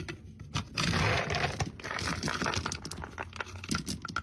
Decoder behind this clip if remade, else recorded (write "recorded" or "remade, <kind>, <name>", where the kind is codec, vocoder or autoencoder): recorded